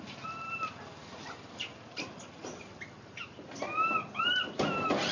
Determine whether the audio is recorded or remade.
recorded